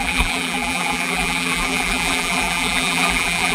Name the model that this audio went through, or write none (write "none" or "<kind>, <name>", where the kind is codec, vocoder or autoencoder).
vocoder, BigVGAN v2